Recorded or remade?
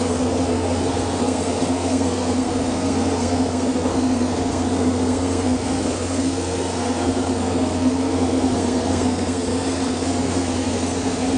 remade